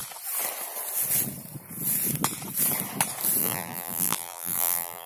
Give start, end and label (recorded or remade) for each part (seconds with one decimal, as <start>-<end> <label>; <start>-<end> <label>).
0.0-3.4 recorded; 3.4-5.1 remade